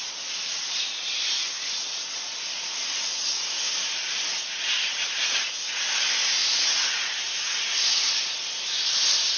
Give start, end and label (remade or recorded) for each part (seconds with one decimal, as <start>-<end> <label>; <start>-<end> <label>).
0.0-1.4 recorded; 1.4-2.7 remade; 2.7-6.4 recorded; 6.4-7.1 remade; 7.1-9.4 recorded